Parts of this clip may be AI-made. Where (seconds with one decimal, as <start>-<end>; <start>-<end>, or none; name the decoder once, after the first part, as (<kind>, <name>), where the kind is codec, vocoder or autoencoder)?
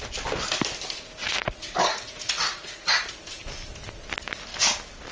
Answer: 1.2-3.1 (vocoder, Vocos)